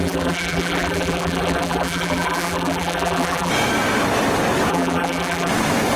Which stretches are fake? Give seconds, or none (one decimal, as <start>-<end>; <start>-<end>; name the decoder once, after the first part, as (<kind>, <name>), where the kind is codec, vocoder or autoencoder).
0.0-3.5 (vocoder, BigVGAN v2); 4.7-5.5